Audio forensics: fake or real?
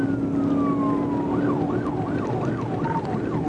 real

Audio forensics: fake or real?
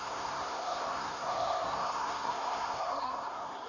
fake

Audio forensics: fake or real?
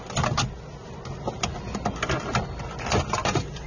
real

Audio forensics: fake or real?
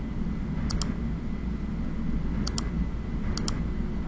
real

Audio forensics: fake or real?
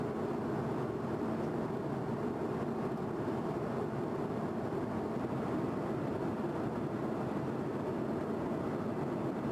real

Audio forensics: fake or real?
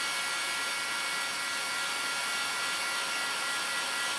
real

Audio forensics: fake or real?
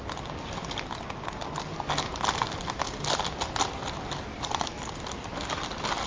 real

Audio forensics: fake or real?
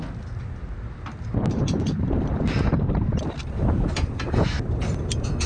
real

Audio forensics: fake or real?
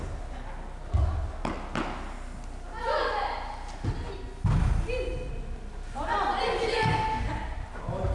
real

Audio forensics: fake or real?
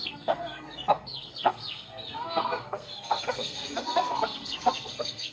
fake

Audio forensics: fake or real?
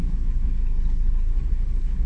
fake